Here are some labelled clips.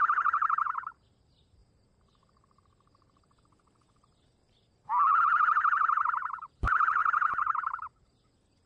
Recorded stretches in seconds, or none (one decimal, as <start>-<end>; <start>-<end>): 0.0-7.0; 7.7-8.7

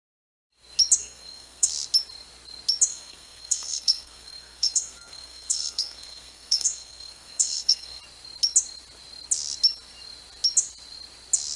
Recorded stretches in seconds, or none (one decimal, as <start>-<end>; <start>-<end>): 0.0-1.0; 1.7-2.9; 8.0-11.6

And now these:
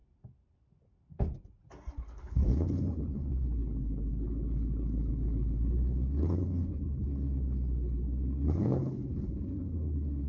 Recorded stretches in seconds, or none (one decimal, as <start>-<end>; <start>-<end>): 0.0-1.9

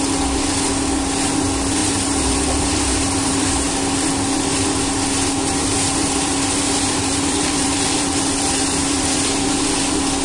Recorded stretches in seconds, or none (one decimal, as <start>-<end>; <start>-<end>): 0.0-1.8; 3.7-5.6; 9.4-10.2

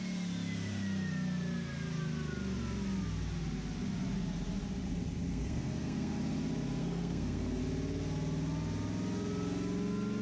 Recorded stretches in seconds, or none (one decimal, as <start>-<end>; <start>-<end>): 0.0-5.3; 6.2-6.8; 7.6-10.2

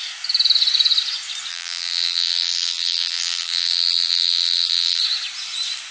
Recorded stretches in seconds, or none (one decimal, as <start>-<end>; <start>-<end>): 0.0-1.5; 5.0-5.9